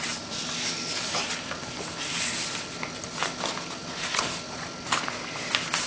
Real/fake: real